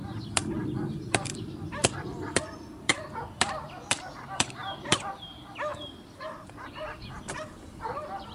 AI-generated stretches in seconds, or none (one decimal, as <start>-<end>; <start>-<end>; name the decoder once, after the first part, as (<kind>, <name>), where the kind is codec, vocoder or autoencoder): 0.0-5.7 (vocoder, BigVGAN v2); 6.5-8.3